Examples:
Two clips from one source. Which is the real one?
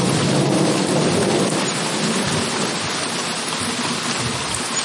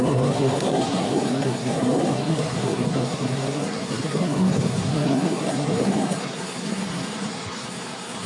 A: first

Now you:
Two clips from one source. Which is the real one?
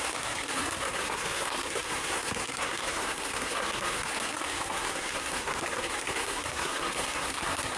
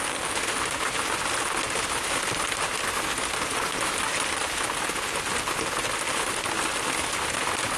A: second